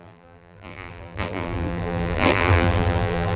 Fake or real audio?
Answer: fake